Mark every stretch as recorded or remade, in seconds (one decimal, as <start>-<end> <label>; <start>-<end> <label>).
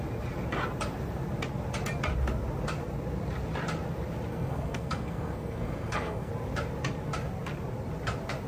0.0-4.3 recorded; 4.3-6.3 remade; 6.3-8.5 recorded